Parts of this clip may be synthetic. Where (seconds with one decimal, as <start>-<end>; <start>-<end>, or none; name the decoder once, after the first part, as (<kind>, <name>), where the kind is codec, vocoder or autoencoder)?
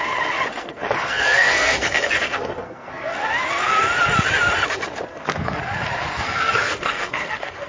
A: 0.5-3.1 (codec, SNAC); 5.1-5.6; 6.1-7.7